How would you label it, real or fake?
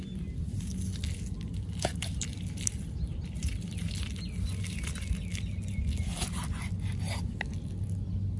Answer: real